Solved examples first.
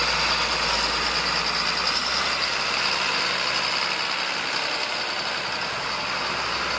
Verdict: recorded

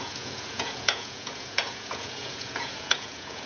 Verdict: remade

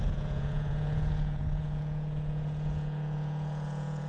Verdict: remade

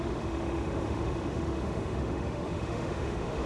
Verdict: remade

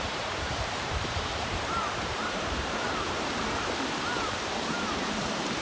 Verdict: remade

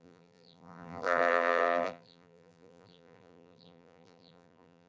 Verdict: remade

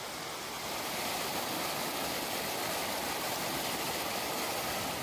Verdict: recorded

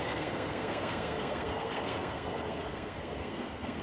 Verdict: remade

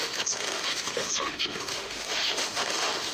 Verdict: remade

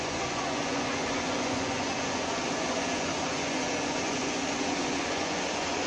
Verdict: remade